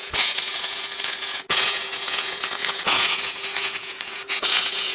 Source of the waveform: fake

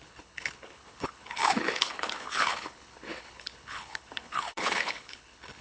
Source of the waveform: fake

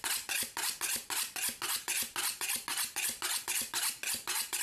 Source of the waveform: real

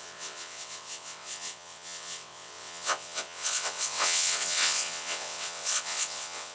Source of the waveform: fake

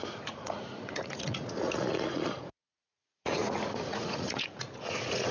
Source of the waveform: fake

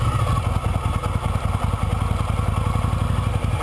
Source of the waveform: real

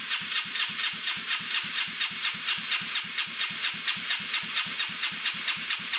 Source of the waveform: fake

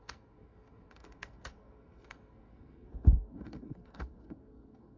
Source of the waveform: fake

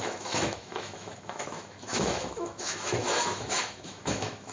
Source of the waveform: fake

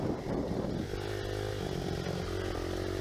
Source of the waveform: real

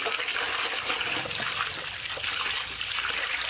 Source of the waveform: real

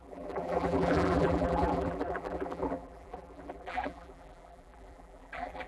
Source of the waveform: fake